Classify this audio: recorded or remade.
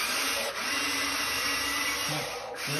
remade